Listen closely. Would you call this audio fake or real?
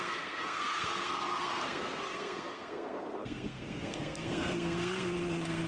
fake